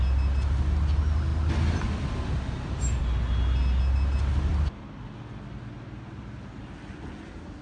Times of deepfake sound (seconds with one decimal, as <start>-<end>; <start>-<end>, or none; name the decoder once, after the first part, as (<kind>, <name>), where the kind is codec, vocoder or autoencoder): none